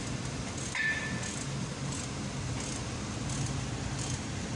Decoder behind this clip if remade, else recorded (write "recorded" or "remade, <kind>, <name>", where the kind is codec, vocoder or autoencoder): recorded